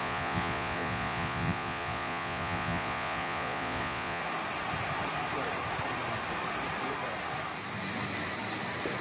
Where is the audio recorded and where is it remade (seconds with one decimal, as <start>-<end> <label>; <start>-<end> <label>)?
0.0-4.2 remade; 4.2-9.0 recorded